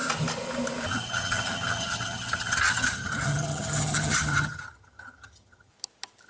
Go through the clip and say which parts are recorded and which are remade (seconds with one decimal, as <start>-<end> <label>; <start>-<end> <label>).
0.0-0.9 recorded; 0.9-5.7 remade; 5.7-6.3 recorded